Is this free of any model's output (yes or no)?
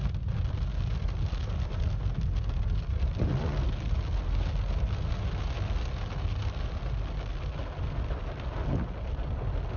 yes